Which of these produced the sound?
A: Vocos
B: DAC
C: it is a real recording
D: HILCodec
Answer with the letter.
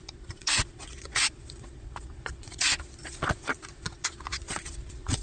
A